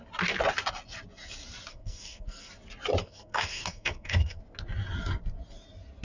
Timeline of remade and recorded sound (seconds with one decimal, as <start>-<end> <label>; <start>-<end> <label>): 0.0-1.7 recorded; 1.7-2.5 remade; 2.5-3.0 recorded; 3.0-4.4 remade; 4.4-6.0 recorded